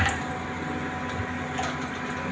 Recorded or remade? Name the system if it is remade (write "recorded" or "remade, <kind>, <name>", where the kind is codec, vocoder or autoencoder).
recorded